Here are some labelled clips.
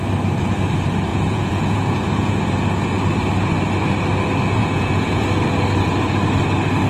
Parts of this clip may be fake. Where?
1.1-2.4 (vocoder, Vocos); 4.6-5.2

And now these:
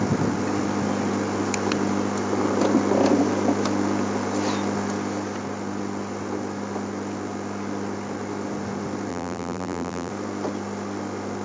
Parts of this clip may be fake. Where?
9.1-10.1 (vocoder, BigVGAN v2)

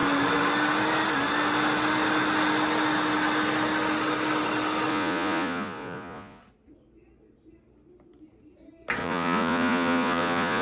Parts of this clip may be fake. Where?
4.9-6.4 (vocoder, Vocos); 9.0-10.6

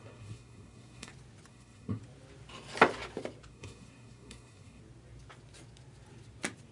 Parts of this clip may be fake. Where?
0.0-1.1 (codec, SNAC); 1.5-2.0; 3.5-4.8

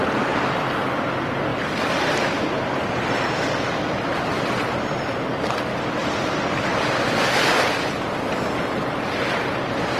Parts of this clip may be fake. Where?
6.0-7.5 (vocoder, BigVGAN v2)

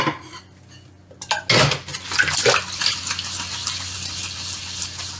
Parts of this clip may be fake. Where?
none